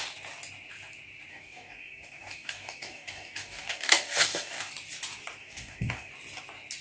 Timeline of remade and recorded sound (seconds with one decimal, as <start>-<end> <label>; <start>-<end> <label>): 0.0-1.3 recorded; 1.3-4.7 remade; 4.7-5.4 recorded; 5.4-6.1 remade; 6.1-6.8 recorded

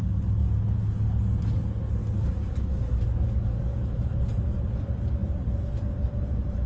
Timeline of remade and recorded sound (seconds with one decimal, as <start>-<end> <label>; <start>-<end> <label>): 0.0-2.0 recorded; 2.0-4.0 remade; 4.0-6.7 recorded

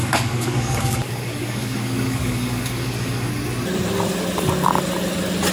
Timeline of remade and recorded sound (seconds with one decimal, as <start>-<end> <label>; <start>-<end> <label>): 0.0-3.3 remade; 3.3-5.5 recorded

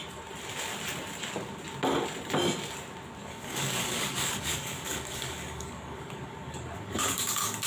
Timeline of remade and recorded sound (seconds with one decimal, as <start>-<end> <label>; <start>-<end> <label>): 0.0-3.2 recorded; 3.2-7.7 remade

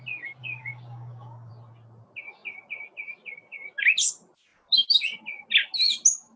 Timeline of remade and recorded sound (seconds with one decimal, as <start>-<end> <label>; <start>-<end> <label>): 0.0-0.4 recorded; 0.4-1.5 remade; 1.5-6.4 recorded

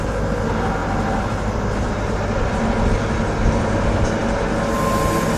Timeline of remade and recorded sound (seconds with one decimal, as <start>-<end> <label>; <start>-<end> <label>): 0.0-5.4 recorded

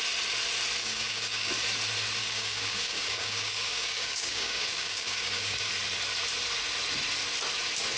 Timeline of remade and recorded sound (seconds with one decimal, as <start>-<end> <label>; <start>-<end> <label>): 0.0-0.8 recorded; 0.8-1.5 remade; 1.5-2.2 recorded; 2.2-5.7 remade; 5.7-8.0 recorded